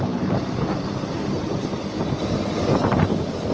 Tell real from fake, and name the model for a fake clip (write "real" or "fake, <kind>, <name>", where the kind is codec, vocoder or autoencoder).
fake, vocoder, BigVGAN v2